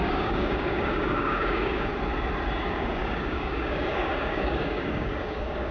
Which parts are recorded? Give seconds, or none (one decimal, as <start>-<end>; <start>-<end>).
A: 1.9-2.6

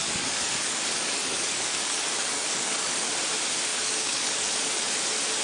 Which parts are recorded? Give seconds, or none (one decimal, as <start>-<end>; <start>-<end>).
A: 3.1-3.7; 4.9-5.4